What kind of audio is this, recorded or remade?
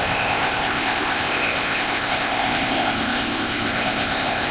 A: remade